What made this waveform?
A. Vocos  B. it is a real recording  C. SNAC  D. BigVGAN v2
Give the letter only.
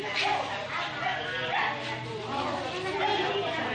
B